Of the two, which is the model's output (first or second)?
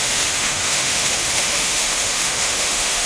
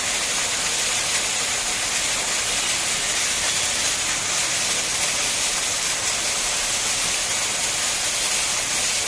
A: first